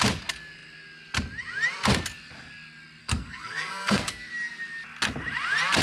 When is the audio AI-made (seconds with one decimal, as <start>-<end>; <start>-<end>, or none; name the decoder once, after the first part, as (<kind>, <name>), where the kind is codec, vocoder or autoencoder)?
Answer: 3.0-4.3 (codec, SNAC)